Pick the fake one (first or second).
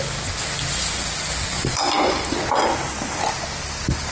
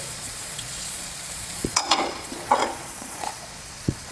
second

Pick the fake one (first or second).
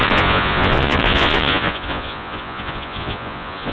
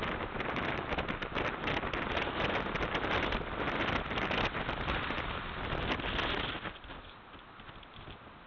first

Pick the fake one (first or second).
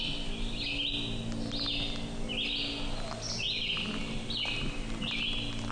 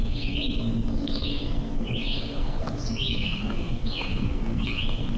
second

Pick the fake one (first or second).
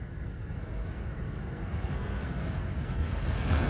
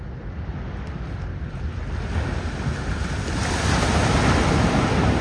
first